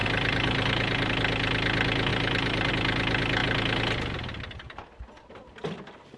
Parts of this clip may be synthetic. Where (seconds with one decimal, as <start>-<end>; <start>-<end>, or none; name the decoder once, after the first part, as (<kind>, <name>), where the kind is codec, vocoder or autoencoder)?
0.0-1.1 (vocoder, BigVGAN v2); 2.1-2.7